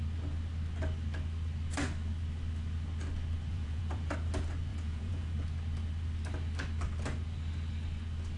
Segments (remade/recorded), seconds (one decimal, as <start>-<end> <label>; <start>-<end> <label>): 0.0-3.5 recorded; 3.5-4.1 remade; 4.1-4.7 recorded; 4.7-5.3 remade; 5.3-8.4 recorded